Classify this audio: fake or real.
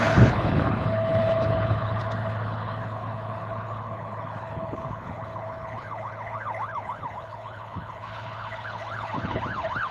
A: fake